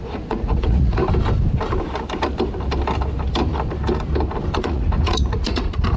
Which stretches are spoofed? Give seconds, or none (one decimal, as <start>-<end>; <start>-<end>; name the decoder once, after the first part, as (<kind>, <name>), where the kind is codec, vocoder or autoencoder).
0.0-1.0 (vocoder, Vocos); 4.6-6.0